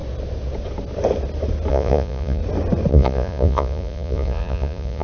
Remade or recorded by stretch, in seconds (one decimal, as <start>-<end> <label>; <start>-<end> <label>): 0.0-1.7 recorded; 1.7-2.4 remade; 2.4-2.9 recorded; 2.9-5.0 remade

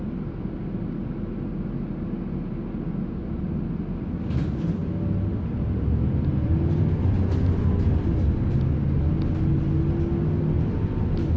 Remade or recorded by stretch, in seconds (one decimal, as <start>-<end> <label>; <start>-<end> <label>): 0.0-11.4 recorded

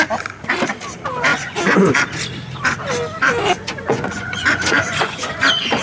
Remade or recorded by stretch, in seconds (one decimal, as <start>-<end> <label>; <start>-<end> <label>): 0.0-1.3 recorded; 1.3-1.9 remade; 1.9-3.4 recorded; 3.4-5.8 remade